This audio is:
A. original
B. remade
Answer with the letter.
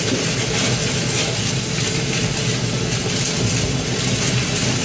A